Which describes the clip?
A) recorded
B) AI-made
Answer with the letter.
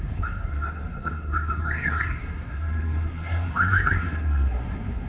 B